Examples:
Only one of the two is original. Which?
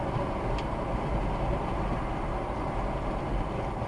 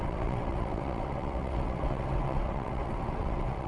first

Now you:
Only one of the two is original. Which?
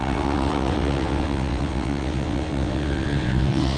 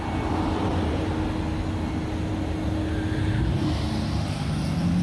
second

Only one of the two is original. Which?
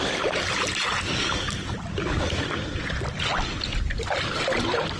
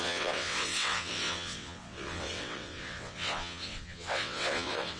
first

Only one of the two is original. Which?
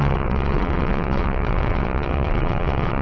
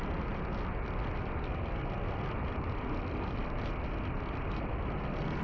second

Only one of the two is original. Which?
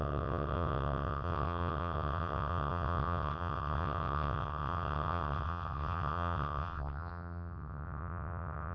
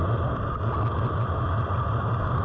second